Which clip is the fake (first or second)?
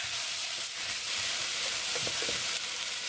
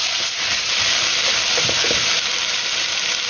first